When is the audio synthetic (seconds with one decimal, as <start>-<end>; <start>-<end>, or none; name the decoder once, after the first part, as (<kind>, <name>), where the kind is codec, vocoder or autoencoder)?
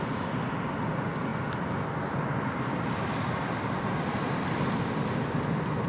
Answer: none